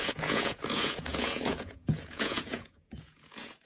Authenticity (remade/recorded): remade